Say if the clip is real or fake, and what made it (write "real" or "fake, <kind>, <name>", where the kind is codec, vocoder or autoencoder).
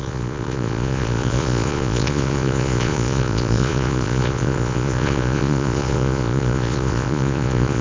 fake, vocoder, Vocos